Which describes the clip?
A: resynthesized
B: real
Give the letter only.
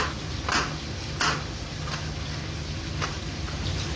B